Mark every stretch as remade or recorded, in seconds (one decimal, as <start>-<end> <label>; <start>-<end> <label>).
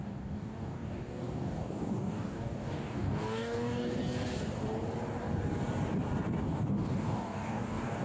0.0-4.0 remade; 4.0-6.4 recorded; 6.4-8.0 remade